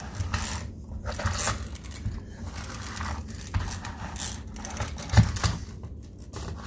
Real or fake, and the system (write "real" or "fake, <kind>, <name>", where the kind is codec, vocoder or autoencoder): real